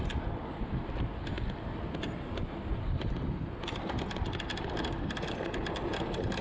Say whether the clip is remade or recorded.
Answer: recorded